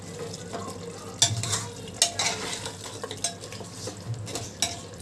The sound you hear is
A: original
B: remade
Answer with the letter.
A